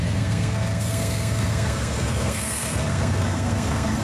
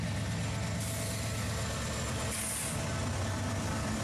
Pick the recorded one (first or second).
second